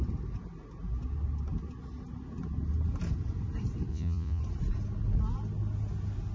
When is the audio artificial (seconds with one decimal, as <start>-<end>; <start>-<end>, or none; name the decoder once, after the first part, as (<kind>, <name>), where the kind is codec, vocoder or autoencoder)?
3.9-4.4 (vocoder, Vocos)